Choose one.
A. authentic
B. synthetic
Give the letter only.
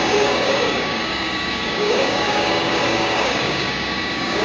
B